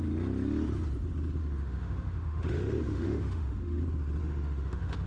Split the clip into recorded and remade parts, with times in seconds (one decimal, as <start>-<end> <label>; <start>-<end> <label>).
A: 0.0-1.4 recorded; 1.4-3.8 remade; 3.8-4.2 recorded; 4.2-5.1 remade